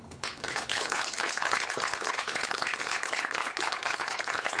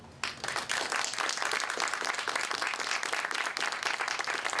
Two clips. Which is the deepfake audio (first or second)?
first